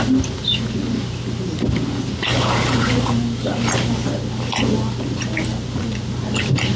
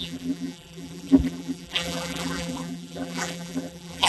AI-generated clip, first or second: second